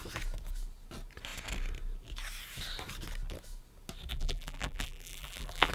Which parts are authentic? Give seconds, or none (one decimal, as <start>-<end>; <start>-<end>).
0.0-4.1